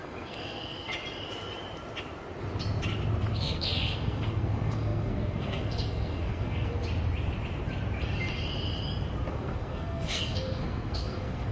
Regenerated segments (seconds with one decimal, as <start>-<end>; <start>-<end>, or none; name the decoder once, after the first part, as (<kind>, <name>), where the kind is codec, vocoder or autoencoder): 0.0-0.9 (codec, SNAC); 3.3-6.8; 9.3-11.5